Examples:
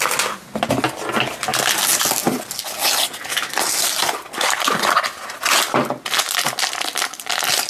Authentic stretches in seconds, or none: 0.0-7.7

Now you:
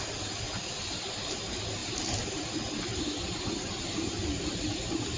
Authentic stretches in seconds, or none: 0.0-4.2; 4.8-5.2

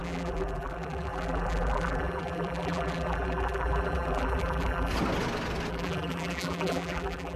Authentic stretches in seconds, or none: 4.9-5.7

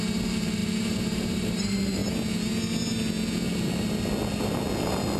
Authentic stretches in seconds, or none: 2.0-5.2

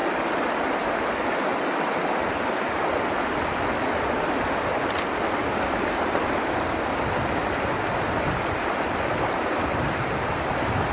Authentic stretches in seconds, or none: 0.0-10.9

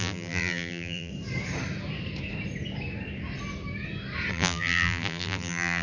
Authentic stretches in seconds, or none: 1.1-4.3

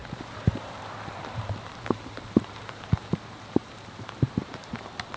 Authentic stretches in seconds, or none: none

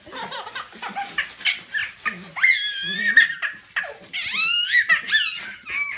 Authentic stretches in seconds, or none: 0.0-6.0